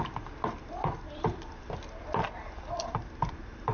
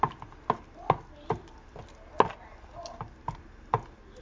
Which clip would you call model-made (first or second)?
first